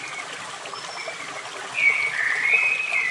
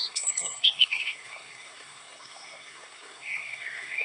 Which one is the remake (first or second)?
second